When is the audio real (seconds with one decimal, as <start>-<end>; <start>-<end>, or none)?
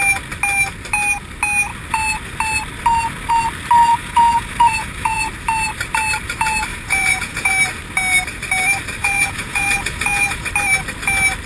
0.0-3.9; 5.3-6.7; 7.5-9.0; 10.5-11.5